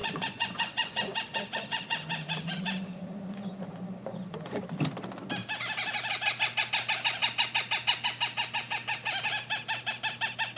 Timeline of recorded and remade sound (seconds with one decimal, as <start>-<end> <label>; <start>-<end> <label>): 0.0-4.6 remade; 4.6-10.6 recorded